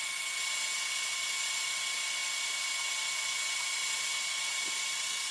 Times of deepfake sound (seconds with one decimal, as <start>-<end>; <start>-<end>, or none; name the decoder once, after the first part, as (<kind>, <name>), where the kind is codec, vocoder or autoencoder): none